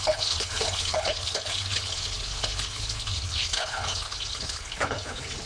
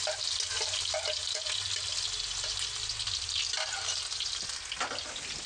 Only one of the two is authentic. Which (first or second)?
second